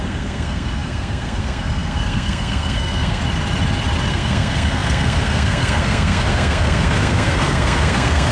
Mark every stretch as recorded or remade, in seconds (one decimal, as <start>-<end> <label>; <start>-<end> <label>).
0.0-3.2 remade; 3.2-4.1 recorded; 4.1-8.3 remade